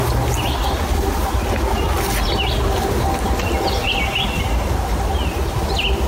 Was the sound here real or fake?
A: real